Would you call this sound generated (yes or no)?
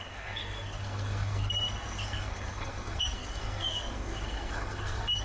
yes